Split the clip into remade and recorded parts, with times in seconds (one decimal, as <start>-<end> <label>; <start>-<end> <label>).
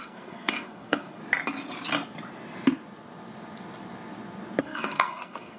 0.0-1.2 remade; 1.2-4.6 recorded; 4.6-5.6 remade